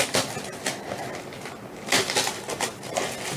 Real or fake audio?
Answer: real